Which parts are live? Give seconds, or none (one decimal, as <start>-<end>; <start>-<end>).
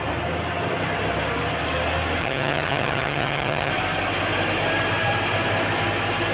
0.0-2.2; 3.7-6.3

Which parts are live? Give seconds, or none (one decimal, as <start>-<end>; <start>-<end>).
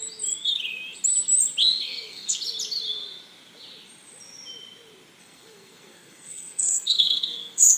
0.0-1.6; 2.4-5.2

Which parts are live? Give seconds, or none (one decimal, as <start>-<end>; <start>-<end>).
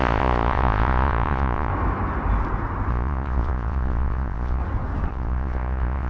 1.7-2.9; 4.6-5.1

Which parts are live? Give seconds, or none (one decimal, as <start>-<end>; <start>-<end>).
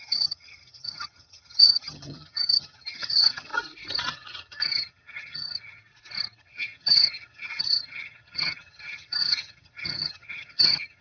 3.5-4.1; 5.8-6.4